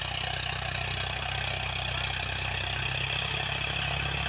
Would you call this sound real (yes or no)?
yes